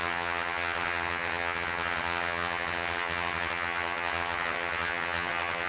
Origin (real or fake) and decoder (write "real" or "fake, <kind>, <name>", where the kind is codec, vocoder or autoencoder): fake, vocoder, HiFi-GAN